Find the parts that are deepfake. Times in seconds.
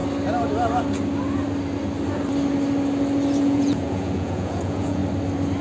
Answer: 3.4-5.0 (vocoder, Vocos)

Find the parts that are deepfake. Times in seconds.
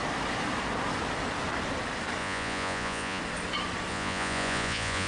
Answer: 2.2-3.2 (vocoder, Vocos); 3.9-5.1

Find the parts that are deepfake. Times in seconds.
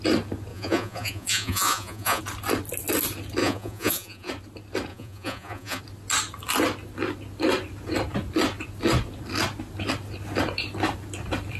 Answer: 0.5-2.2 (vocoder, Vocos); 3.4-4.3; 4.9-5.8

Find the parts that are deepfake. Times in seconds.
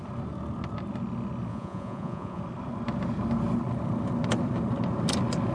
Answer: 1.5-2.4 (vocoder, Vocos)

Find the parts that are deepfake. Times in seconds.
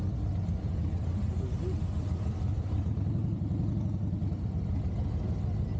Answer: none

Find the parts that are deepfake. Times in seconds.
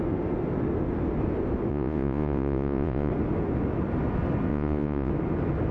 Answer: 1.7-3.1 (vocoder, Vocos); 4.5-5.1